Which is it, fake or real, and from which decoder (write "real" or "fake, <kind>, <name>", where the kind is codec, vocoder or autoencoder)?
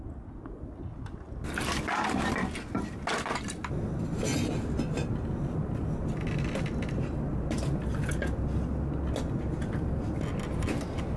real